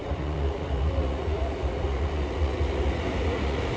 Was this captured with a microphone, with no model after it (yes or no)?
no